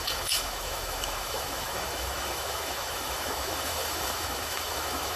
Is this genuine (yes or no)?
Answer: no